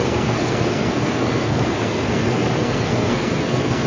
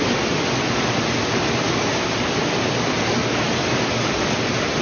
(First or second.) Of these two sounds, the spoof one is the first